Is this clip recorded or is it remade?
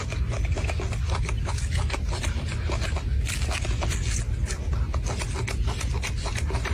recorded